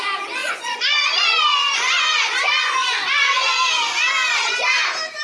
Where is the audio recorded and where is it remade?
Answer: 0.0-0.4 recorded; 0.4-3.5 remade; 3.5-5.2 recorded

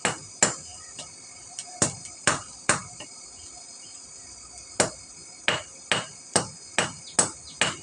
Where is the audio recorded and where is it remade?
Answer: 0.0-0.7 recorded; 0.7-3.2 remade; 3.2-7.8 recorded

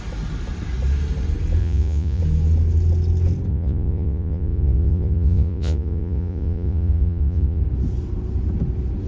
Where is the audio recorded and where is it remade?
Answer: 0.0-1.6 recorded; 1.6-2.2 remade; 2.2-3.5 recorded; 3.5-7.6 remade; 7.6-9.1 recorded